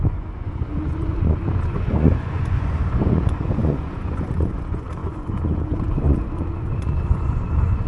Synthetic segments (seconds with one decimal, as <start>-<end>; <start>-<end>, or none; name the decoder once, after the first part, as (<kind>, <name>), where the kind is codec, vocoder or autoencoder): 0.0-7.9 (vocoder, Vocos)